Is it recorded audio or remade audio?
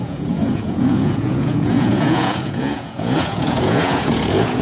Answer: remade